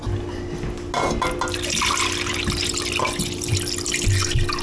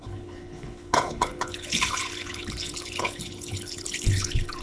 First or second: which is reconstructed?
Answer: second